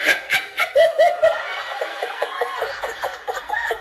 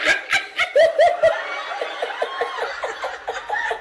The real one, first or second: second